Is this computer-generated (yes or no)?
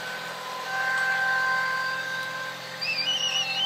no